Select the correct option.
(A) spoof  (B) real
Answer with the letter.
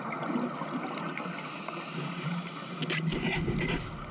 B